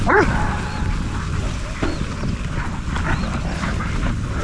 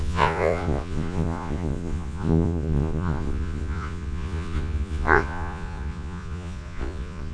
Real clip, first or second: first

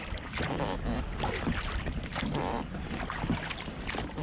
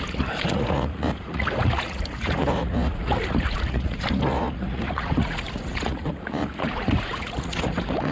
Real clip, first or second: first